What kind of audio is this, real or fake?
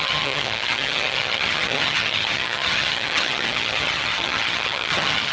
fake